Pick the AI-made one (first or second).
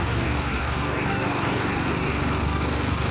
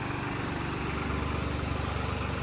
first